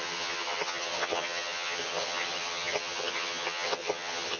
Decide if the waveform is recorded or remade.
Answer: remade